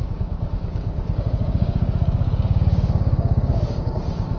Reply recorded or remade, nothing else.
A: remade